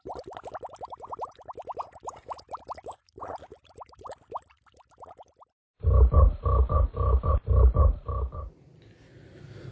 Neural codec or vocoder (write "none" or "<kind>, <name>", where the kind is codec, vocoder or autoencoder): none